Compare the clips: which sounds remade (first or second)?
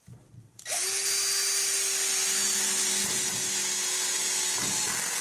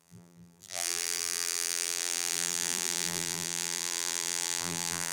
second